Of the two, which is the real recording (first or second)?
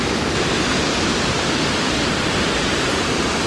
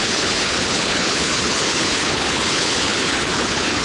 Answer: first